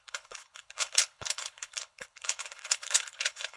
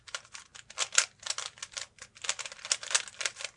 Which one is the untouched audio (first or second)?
second